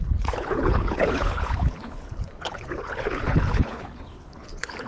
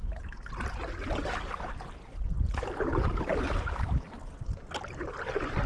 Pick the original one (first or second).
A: second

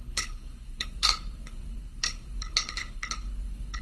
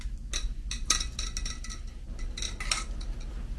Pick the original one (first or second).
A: second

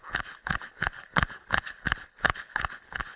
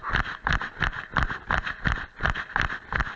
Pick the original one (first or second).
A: second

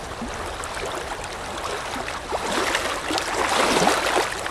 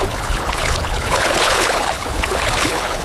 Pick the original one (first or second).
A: first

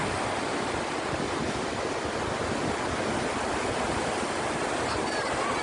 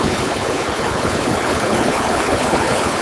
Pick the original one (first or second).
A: first